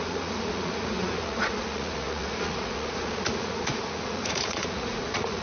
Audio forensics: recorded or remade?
remade